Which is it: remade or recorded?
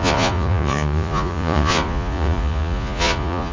remade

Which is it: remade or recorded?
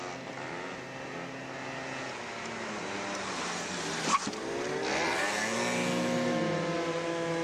recorded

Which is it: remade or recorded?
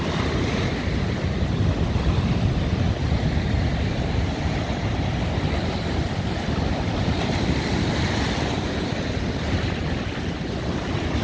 remade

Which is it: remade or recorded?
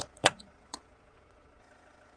remade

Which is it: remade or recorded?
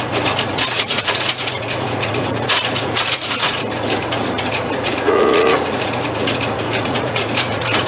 remade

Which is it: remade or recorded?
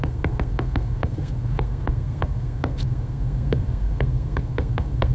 remade